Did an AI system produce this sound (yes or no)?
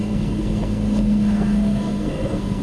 yes